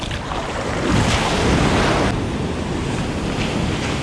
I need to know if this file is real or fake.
real